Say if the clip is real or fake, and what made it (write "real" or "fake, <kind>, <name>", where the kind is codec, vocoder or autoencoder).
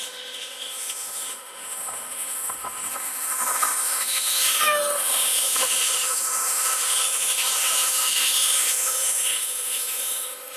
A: fake, autoencoder, DAC-VAE